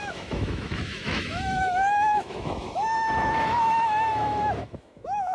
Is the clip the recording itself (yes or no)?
no